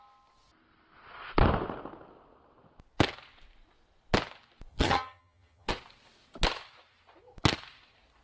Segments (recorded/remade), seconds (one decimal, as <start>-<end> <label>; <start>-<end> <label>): 0.0-4.7 recorded; 4.7-5.7 remade; 5.7-8.2 recorded